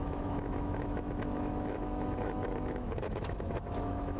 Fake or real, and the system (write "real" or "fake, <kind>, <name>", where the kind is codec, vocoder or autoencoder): fake, autoencoder, DAC-VAE